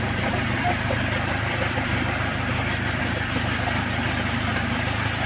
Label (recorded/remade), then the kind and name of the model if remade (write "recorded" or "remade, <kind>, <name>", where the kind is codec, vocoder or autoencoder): remade, vocoder, BigVGAN v2